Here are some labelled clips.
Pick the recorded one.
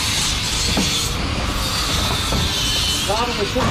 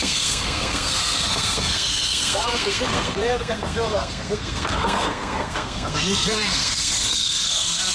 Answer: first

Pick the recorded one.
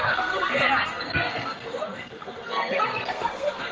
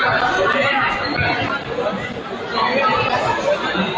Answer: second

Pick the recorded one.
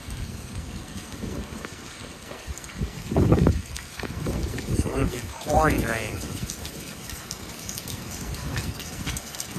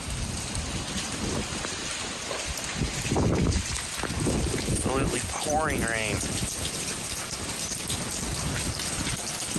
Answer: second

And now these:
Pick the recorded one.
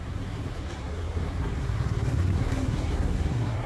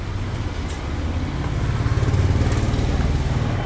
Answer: second